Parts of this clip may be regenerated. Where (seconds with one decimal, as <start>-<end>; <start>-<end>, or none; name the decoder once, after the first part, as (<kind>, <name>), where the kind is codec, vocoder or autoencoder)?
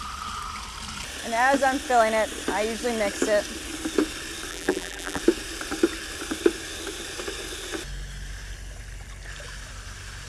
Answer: 4.5-5.2 (vocoder, BigVGAN v2)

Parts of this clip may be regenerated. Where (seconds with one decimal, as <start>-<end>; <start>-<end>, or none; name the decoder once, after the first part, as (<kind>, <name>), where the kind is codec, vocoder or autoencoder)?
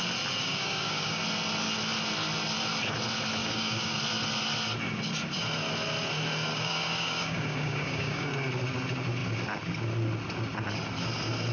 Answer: 0.4-1.2 (codec, DAC); 3.4-4.0; 6.5-8.3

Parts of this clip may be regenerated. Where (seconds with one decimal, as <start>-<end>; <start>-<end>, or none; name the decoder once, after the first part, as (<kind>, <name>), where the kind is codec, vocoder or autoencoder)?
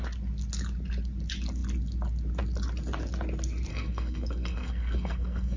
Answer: 3.7-5.6 (codec, SNAC)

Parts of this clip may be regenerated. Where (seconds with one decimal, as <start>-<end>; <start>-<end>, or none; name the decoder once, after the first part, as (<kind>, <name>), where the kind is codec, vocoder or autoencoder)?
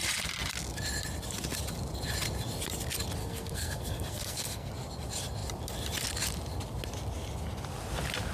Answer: 3.2-4.7 (codec, SNAC)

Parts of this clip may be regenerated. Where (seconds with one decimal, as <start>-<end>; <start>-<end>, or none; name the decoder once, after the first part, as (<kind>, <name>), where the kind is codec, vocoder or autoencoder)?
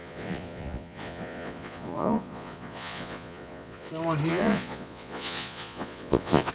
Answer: 0.0-3.9 (vocoder, Vocos); 4.3-6.5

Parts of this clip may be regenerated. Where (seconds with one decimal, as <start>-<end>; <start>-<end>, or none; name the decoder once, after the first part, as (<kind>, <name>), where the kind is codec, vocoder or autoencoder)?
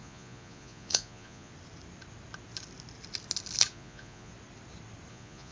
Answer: 0.0-1.5 (vocoder, Vocos); 3.7-4.3; 5.1-5.5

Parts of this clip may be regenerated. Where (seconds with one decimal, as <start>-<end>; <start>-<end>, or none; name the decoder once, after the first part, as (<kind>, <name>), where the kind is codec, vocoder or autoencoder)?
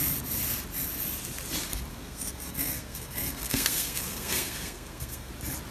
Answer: 1.9-5.3 (codec, SNAC)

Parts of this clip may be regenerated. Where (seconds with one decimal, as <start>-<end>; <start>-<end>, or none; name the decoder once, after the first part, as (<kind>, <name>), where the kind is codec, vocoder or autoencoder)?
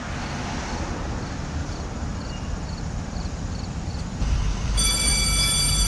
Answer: 1.6-5.1 (vocoder, BigVGAN v2)